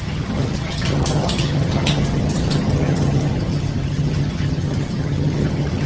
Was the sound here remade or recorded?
remade